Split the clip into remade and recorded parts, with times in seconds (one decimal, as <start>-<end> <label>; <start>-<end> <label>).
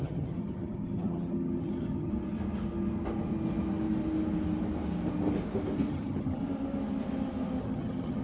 0.0-2.1 remade; 2.1-5.9 recorded; 5.9-6.4 remade; 6.4-7.6 recorded; 7.6-8.2 remade